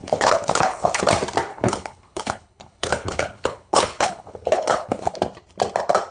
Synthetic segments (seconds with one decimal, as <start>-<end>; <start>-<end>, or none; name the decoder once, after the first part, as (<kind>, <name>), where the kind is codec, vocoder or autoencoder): 0.0-1.0 (codec, HILCodec); 1.5-5.2